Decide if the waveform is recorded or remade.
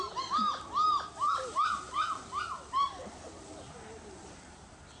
recorded